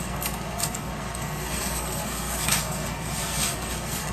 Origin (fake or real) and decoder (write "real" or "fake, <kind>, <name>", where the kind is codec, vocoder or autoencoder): fake, codec, SNAC